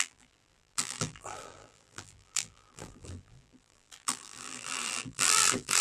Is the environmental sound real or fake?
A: fake